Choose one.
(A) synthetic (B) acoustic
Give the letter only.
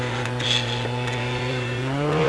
A